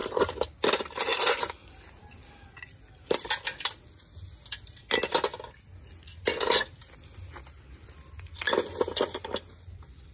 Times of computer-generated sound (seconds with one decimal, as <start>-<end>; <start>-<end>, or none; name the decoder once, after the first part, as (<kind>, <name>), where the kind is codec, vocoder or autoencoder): none